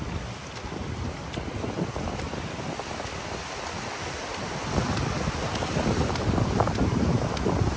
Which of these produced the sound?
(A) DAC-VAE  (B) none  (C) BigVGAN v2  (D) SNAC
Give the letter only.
B